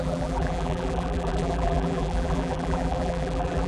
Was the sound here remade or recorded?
remade